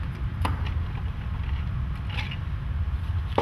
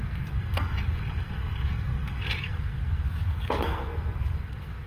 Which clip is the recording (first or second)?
first